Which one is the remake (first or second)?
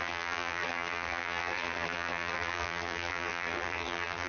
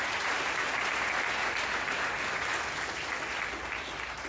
first